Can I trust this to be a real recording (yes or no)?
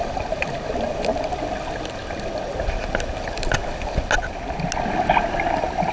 yes